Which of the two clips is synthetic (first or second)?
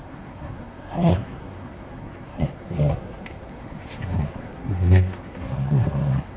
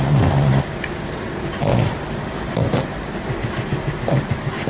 first